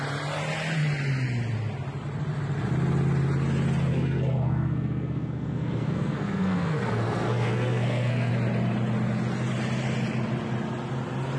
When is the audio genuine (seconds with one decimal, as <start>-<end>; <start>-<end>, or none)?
0.0-3.9; 8.3-11.4